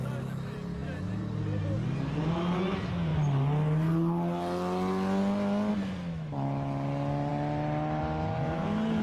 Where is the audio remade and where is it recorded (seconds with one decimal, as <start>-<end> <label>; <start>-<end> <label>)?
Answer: 0.0-9.0 recorded